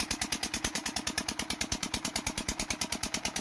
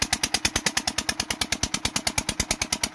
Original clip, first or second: second